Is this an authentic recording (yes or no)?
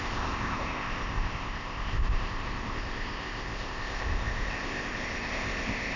no